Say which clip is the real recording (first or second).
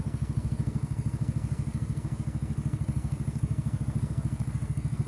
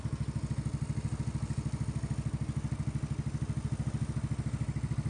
second